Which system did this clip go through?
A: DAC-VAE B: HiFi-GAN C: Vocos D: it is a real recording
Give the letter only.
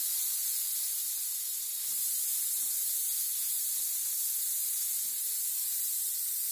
D